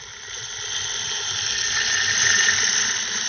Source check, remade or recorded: recorded